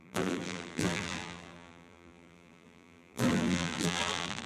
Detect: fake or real fake